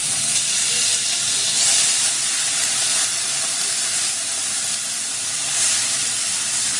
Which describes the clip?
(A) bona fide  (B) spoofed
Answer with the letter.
B